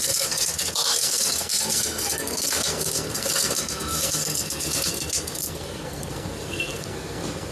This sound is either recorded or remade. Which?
remade